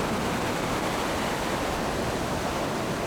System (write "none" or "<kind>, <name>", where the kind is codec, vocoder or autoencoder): none